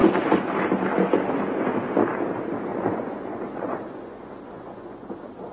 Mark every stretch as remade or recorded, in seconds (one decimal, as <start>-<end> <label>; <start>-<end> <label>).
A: 0.0-2.7 recorded; 2.7-5.1 remade; 5.1-5.5 recorded